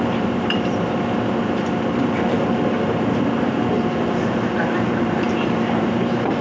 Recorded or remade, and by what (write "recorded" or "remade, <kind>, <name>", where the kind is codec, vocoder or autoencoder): remade, vocoder, BigVGAN v2